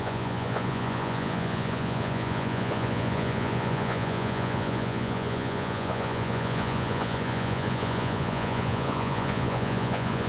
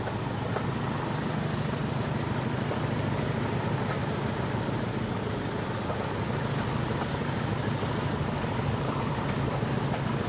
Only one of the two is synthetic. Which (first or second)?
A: first